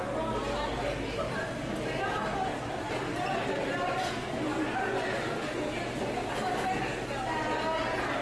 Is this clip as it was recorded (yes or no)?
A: yes